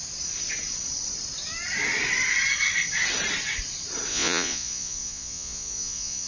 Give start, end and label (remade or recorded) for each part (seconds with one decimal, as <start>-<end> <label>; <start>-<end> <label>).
0.0-4.1 recorded; 4.1-6.3 remade